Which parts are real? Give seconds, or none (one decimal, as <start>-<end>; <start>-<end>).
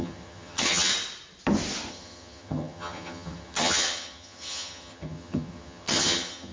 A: 0.9-1.9